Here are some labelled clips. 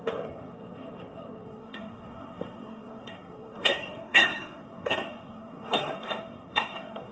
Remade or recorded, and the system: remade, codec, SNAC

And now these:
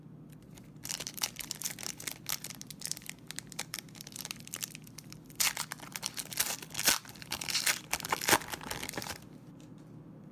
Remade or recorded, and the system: recorded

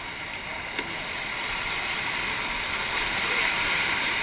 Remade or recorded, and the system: recorded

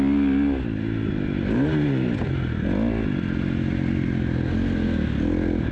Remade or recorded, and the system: recorded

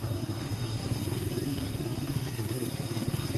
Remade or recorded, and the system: remade, codec, SNAC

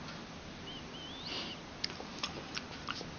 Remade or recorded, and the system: recorded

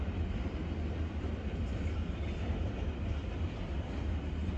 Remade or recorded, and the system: recorded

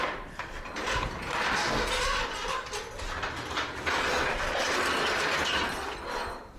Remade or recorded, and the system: recorded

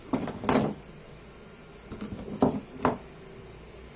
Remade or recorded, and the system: recorded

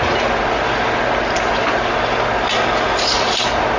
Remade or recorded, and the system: recorded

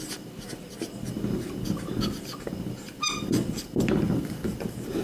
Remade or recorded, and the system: recorded